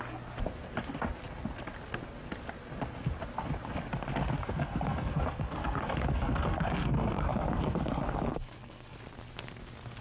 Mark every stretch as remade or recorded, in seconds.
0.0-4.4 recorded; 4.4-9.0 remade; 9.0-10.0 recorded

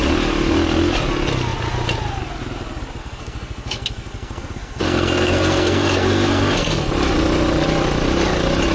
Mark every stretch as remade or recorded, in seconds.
0.0-3.0 recorded; 3.0-6.9 remade; 6.9-8.7 recorded